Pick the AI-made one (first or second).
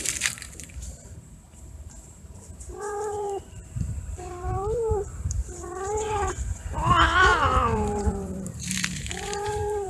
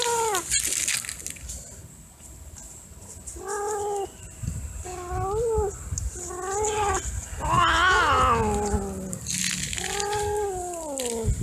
first